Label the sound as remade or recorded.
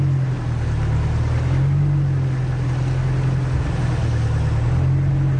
recorded